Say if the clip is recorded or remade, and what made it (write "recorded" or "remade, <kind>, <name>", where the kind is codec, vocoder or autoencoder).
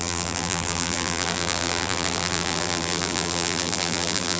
remade, vocoder, BigVGAN v2